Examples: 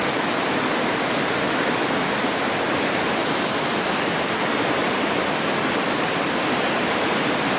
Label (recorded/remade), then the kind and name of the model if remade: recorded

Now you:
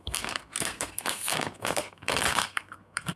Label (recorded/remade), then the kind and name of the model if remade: remade, codec, SNAC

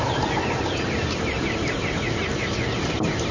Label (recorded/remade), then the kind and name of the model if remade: recorded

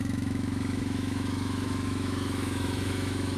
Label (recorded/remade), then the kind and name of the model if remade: remade, autoencoder, DAC-VAE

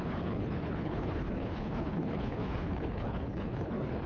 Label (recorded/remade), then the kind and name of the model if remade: remade, codec, HILCodec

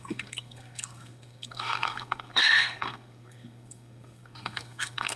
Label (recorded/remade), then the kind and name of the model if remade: remade, codec, SNAC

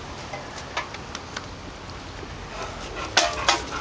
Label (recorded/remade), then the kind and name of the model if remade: recorded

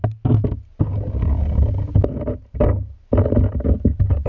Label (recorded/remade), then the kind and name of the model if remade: recorded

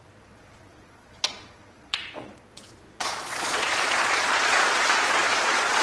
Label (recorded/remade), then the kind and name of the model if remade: remade, vocoder, Vocos